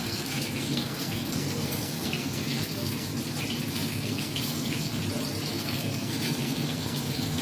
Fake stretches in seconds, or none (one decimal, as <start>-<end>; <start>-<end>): 0.0-3.1; 3.7-5.0; 5.5-7.4